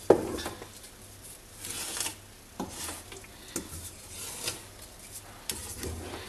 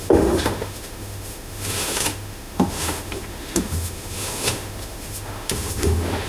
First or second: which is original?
first